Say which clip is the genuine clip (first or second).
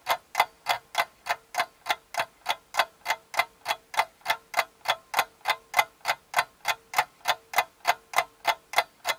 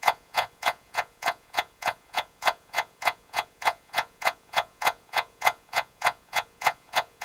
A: first